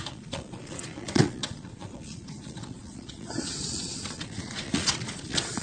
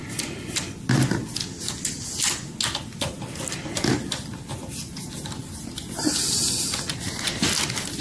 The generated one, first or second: first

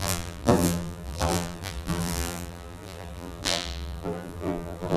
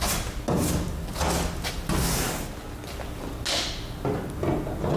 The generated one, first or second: first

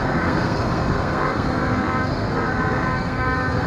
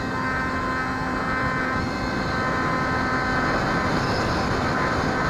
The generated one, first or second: first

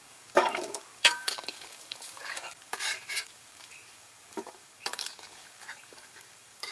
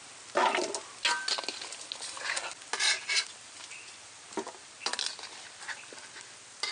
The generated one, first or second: first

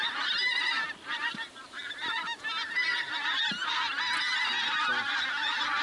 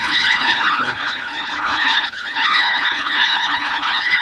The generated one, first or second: second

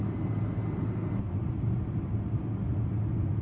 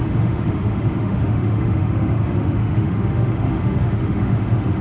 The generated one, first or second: second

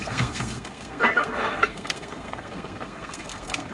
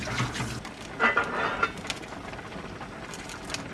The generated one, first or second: first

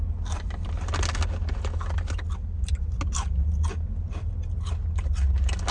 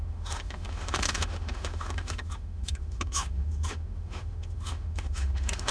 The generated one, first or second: second